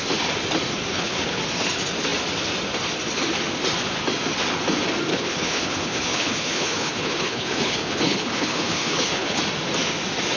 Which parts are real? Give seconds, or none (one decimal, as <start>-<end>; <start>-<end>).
0.0-0.9; 1.4-5.1; 9.4-10.4